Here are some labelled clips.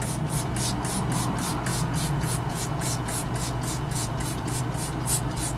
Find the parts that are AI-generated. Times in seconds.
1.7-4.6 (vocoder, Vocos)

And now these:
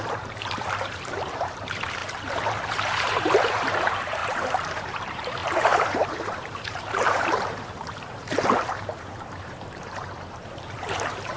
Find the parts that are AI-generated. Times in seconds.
0.0-2.0 (vocoder, BigVGAN v2); 2.7-11.4

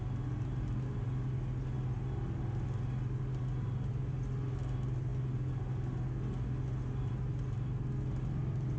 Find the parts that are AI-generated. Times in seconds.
none

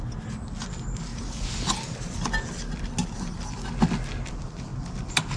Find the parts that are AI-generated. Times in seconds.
none

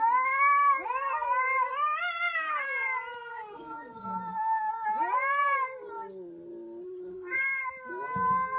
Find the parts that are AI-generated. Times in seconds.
3.3-4.7 (codec, SNAC); 7.1-7.7